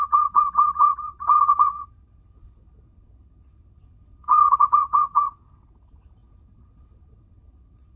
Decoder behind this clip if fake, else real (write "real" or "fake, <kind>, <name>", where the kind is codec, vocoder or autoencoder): fake, vocoder, WaveNeXt